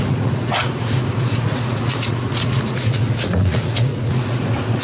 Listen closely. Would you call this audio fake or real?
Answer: fake